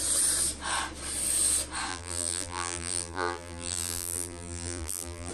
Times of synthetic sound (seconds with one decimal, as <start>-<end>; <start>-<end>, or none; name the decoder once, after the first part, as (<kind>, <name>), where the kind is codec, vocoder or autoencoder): 1.9-5.3 (vocoder, BigVGAN v2)